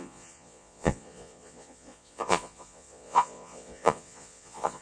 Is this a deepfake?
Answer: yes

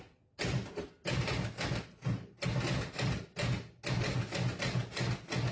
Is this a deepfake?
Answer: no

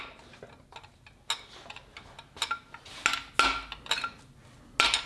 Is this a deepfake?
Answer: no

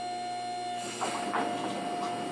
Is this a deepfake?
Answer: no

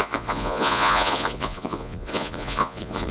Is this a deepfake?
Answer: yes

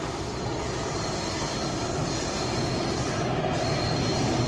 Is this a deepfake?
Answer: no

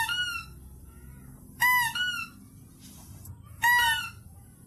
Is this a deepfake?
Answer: no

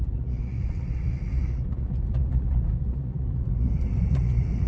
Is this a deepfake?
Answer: yes